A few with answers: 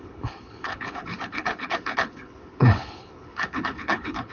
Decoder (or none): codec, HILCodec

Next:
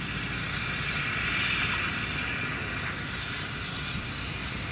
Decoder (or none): none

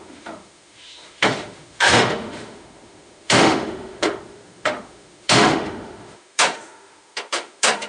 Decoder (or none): autoencoder, DAC-VAE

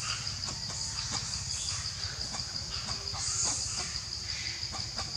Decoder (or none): none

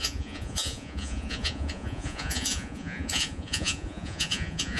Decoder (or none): vocoder, Vocos